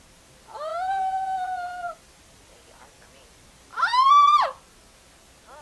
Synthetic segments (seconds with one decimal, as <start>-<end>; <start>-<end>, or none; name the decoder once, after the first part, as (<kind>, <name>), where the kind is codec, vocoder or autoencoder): none